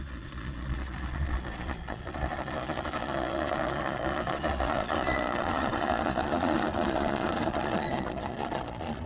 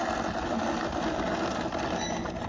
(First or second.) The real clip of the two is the second